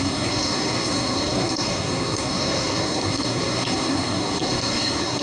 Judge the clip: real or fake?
fake